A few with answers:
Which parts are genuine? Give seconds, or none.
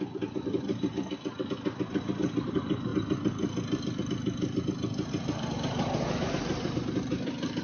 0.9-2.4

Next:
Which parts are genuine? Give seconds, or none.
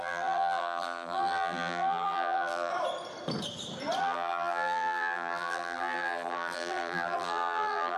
2.7-4.0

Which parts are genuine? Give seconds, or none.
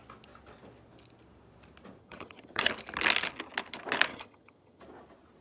0.0-2.0; 2.7-4.1; 4.8-5.4